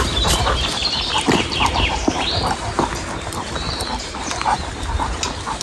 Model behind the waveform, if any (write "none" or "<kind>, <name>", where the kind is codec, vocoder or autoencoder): vocoder, BigVGAN v2